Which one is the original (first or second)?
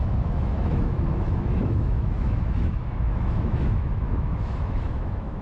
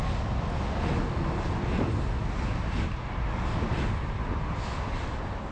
second